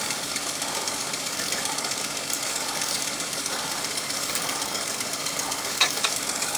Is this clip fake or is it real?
fake